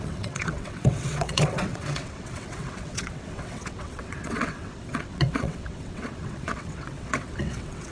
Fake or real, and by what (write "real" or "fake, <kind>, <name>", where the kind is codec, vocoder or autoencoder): fake, vocoder, WaveNeXt